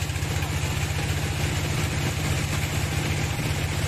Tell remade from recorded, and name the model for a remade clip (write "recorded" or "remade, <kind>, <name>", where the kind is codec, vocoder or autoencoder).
recorded